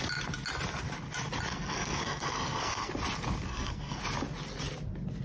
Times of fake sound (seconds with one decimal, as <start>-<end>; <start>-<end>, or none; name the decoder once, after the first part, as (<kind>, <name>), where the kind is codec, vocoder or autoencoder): 1.5-2.9 (codec, SNAC); 3.5-4.0

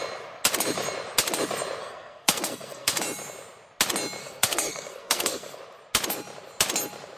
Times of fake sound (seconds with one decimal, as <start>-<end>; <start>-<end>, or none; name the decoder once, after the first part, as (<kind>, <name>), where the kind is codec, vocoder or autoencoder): 1.8-3.0 (codec, SNAC); 4.2-5.6